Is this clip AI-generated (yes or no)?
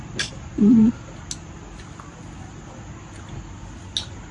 no